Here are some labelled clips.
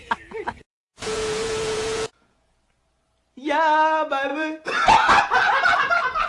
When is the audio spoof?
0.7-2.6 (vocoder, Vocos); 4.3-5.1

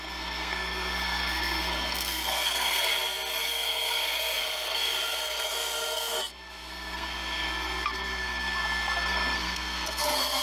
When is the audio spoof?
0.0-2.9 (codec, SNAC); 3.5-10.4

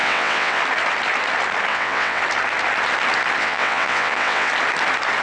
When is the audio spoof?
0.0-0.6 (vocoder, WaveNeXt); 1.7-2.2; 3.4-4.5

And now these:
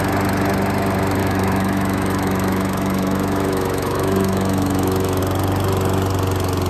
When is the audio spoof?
1.2-5.2 (autoencoder, DAC-VAE)